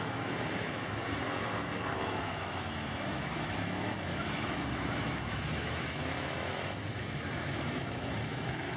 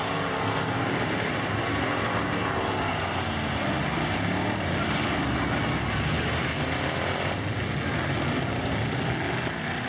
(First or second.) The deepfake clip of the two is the first